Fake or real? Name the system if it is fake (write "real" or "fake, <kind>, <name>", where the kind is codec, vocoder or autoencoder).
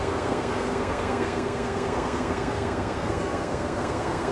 fake, codec, SNAC